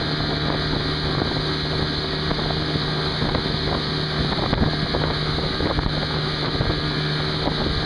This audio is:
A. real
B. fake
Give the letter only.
A